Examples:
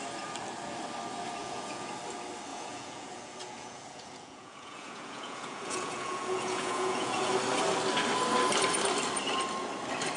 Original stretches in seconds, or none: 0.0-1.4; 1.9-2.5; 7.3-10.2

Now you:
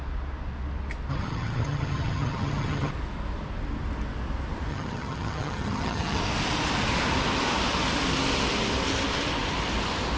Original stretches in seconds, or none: 0.0-1.1; 2.9-4.7; 6.2-10.2

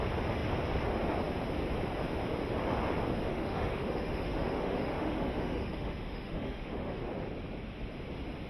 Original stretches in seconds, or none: 0.0-3.3; 7.0-8.5

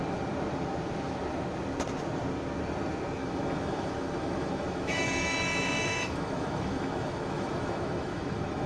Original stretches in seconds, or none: 0.0-3.2

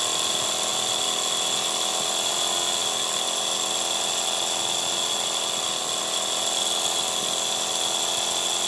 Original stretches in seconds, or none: 0.0-8.7

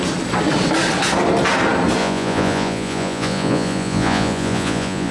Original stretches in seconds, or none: 0.0-2.0